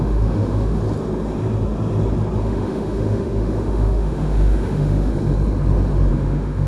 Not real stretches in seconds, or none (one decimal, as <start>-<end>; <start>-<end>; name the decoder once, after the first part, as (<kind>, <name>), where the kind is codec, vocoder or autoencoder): 0.0-0.8 (autoencoder, DAC-VAE); 2.4-5.1; 6.1-6.7